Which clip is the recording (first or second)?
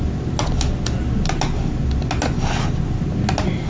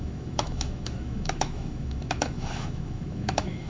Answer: first